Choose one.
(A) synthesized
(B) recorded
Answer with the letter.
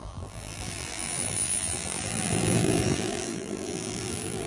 A